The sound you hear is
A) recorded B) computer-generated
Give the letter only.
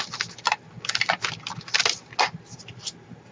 A